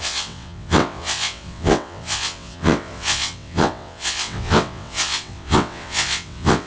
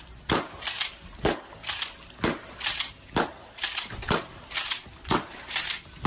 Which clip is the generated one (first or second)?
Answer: first